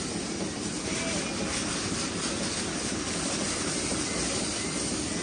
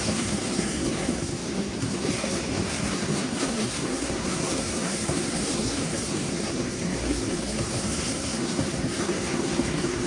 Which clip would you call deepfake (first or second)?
second